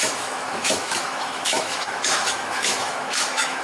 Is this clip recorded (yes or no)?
no